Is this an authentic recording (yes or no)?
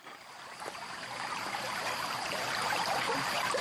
no